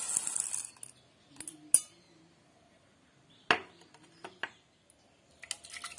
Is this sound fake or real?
real